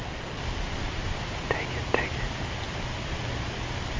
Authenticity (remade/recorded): recorded